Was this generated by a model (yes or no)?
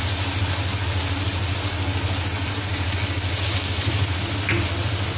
no